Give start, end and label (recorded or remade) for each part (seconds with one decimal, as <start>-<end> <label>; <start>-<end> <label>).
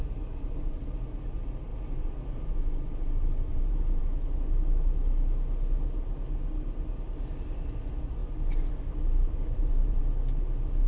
0.0-3.5 recorded; 3.5-4.0 remade; 4.0-9.2 recorded; 9.2-10.0 remade; 10.0-10.9 recorded